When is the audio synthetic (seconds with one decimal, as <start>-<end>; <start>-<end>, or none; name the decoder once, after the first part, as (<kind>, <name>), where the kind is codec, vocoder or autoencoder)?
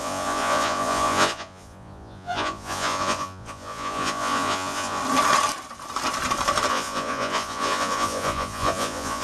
0.0-5.0 (vocoder, Vocos); 6.7-9.2